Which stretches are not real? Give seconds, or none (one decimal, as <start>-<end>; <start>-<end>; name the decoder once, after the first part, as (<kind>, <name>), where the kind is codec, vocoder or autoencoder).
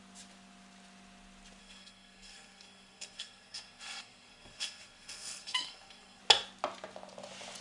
1.6-6.2 (codec, SNAC)